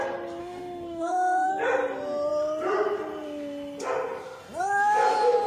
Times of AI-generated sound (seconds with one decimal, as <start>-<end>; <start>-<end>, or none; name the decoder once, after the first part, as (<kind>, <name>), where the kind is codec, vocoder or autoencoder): 0.4-1.5 (autoencoder, DAC-VAE)